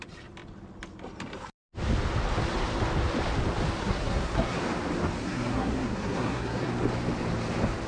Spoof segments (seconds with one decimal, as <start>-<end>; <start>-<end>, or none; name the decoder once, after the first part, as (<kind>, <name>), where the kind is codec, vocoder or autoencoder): 3.8-4.6 (codec, SNAC); 5.2-6.7